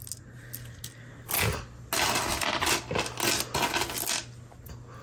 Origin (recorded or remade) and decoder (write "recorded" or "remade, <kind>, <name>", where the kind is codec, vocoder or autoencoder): recorded